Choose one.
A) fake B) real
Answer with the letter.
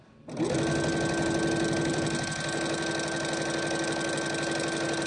B